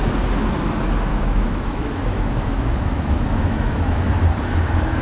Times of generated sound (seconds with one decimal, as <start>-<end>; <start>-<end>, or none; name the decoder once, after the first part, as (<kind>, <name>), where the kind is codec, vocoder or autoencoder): 1.1-4.1 (autoencoder, DAC-VAE)